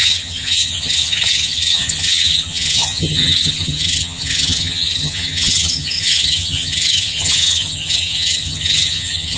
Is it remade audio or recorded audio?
remade